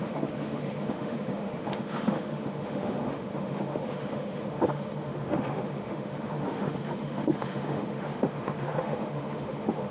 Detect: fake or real fake